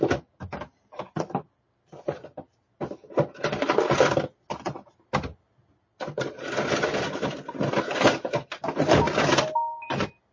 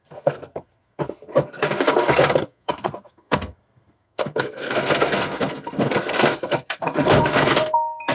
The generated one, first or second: second